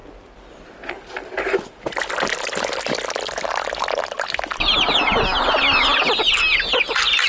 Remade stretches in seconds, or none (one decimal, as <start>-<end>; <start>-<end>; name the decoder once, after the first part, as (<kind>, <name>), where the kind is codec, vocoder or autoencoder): none